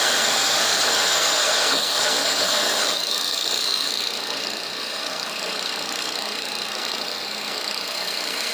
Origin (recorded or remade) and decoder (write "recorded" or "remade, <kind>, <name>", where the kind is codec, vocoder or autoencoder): remade, codec, SNAC